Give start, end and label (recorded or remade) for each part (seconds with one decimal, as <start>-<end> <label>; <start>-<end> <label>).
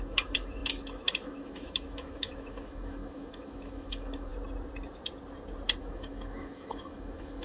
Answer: 0.0-4.3 remade; 4.3-5.8 recorded; 5.8-7.4 remade